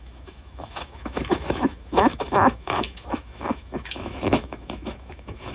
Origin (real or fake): fake